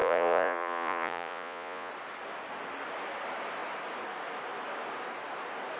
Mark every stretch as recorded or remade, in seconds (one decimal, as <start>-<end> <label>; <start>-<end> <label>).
0.0-1.9 remade; 1.9-5.8 recorded